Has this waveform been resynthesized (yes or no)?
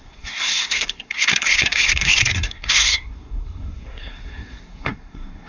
yes